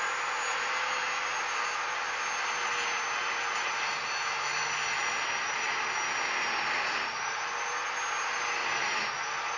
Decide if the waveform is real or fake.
real